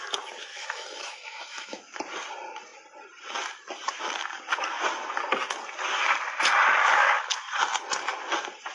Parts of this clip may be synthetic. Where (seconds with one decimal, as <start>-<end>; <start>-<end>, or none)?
0.5-2.0; 6.8-7.5